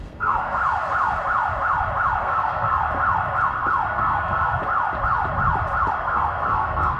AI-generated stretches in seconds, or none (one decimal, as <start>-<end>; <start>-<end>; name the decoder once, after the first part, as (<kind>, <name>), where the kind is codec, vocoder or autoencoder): 0.0-0.6 (codec, SNAC); 2.2-2.8; 3.9-4.6; 6.0-7.0

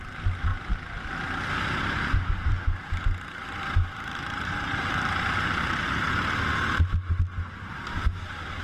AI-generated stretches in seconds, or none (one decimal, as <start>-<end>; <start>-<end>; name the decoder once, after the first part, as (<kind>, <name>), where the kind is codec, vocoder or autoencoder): none